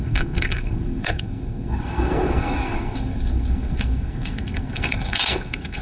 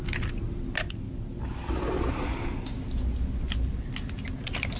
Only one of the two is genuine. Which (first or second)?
second